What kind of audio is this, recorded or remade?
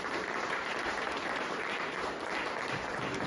remade